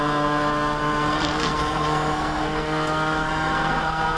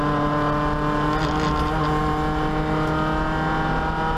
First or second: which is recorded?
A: second